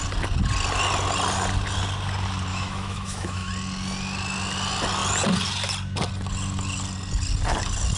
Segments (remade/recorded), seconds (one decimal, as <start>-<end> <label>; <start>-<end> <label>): 0.0-2.5 recorded; 2.5-3.5 remade; 3.5-8.0 recorded